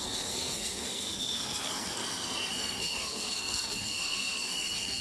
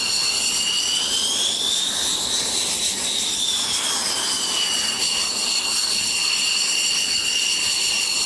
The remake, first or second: first